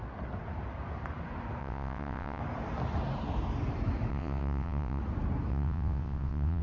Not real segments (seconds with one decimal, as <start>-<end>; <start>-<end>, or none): 1.6-2.4; 4.1-5.0; 5.5-6.6